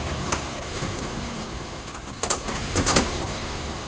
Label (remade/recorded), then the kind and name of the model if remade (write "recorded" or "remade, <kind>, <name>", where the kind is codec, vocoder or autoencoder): remade, codec, SNAC